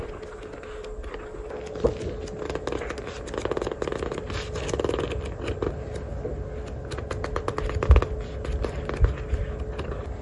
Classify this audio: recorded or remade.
recorded